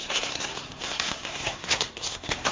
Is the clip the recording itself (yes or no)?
no